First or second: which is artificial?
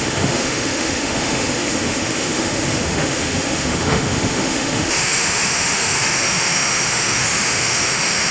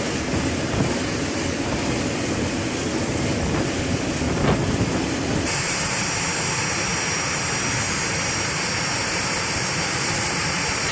first